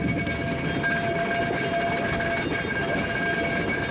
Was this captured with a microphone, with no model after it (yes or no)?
yes